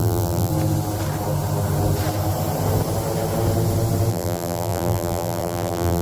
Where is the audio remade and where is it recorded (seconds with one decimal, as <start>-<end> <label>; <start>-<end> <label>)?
0.0-0.5 remade; 0.5-4.1 recorded; 4.1-6.0 remade